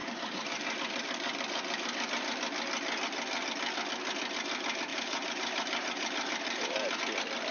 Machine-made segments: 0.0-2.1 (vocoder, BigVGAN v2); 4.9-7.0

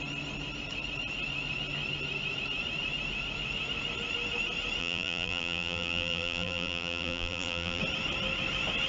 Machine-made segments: 4.8-7.8 (vocoder, BigVGAN v2)